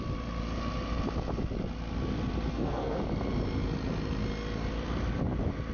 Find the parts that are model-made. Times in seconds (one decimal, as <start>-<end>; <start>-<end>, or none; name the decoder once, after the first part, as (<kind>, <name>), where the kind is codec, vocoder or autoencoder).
2.5-3.0 (codec, SNAC)